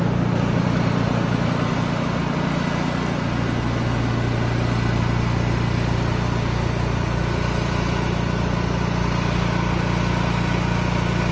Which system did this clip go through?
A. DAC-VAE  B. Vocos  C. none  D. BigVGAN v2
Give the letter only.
C